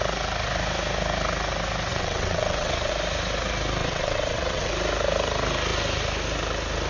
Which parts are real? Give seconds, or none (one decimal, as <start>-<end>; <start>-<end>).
0.0-1.9; 2.9-3.8; 4.7-6.9